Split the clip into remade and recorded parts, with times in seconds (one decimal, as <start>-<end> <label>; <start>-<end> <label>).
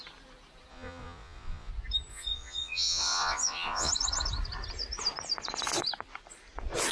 0.0-0.7 recorded; 0.7-1.7 remade; 1.7-2.1 recorded; 2.1-3.9 remade; 3.9-6.9 recorded